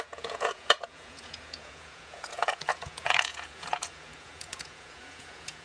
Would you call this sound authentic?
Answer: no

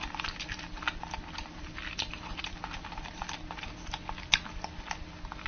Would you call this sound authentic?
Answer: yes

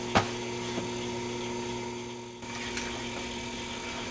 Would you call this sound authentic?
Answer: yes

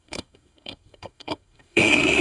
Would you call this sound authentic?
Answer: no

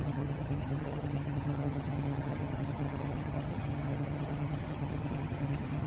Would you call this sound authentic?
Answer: no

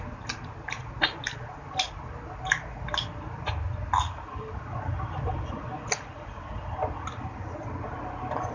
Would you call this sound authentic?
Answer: yes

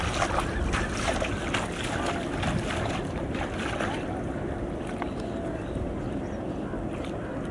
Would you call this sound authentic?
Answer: yes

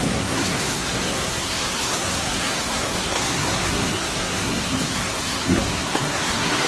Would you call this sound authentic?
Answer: no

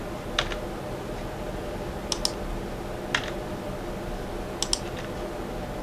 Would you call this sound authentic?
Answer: yes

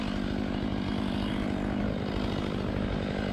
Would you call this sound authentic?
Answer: yes